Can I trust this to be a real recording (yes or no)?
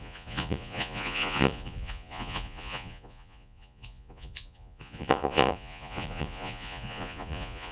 no